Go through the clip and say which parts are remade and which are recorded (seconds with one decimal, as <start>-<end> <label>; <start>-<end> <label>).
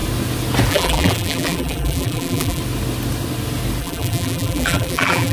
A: 0.0-0.7 recorded; 0.7-2.6 remade; 2.6-3.8 recorded; 3.8-5.3 remade